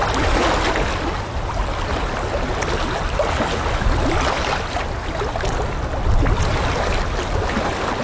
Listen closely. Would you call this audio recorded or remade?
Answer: recorded